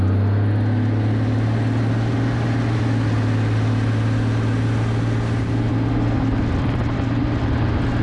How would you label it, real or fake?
real